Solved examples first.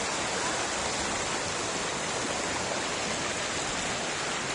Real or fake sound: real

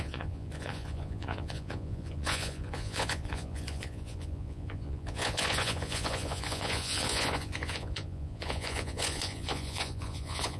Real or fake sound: fake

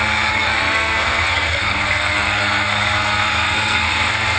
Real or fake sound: fake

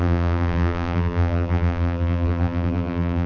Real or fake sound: fake